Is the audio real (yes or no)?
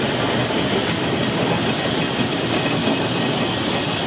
yes